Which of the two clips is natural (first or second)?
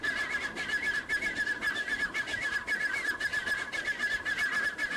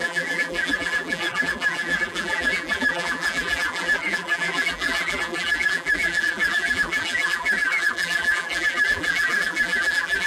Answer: first